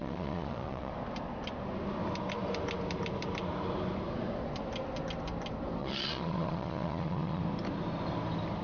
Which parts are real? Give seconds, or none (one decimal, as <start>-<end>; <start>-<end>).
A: 0.9-5.8; 7.4-8.6